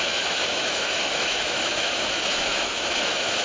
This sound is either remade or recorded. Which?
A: remade